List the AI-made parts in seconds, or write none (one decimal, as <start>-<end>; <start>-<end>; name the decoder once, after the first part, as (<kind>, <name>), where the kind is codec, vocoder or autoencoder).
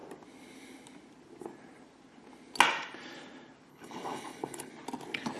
3.7-4.7 (codec, HILCodec)